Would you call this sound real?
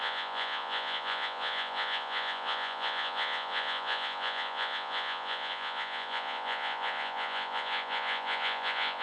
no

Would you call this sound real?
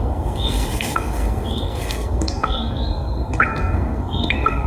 no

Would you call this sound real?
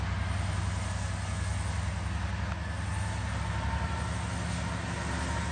yes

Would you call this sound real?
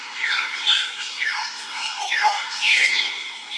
no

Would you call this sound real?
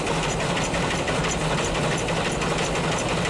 yes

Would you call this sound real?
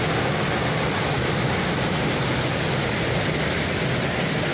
yes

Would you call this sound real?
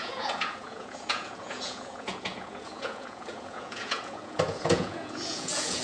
no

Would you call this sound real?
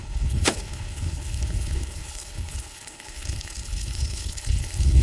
no